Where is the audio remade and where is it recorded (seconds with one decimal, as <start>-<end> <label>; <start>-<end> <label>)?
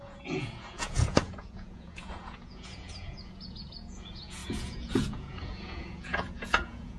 0.0-7.0 remade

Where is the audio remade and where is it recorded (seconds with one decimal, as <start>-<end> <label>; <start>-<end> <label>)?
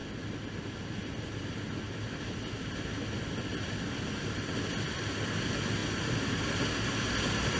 0.0-7.6 recorded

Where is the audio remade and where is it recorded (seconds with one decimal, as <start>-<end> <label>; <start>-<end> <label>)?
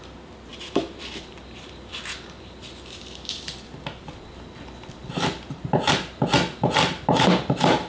0.0-7.9 recorded